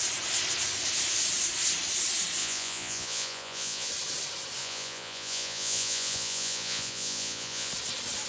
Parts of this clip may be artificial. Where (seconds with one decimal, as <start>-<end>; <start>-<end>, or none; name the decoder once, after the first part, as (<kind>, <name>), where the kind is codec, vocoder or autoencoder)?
2.4-3.9 (vocoder, Vocos); 4.6-7.7